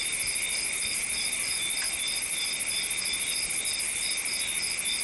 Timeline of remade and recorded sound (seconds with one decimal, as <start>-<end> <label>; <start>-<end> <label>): 0.0-5.0 recorded